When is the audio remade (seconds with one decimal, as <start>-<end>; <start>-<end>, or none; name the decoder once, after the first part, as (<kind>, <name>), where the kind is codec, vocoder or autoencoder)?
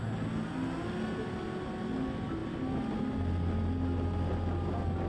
none